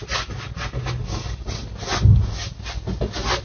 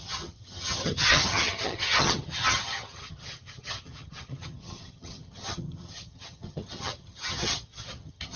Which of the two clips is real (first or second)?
first